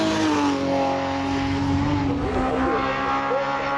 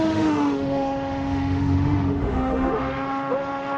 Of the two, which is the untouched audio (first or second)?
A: first